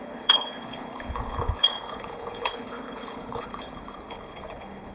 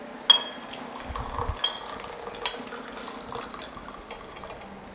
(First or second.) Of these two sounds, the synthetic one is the first